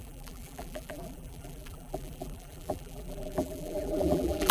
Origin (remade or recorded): remade